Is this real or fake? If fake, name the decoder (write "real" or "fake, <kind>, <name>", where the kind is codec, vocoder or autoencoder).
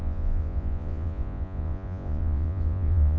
fake, vocoder, Vocos